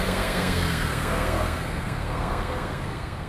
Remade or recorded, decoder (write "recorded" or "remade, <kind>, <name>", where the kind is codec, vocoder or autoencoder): remade, codec, SNAC